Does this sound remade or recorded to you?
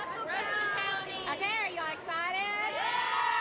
remade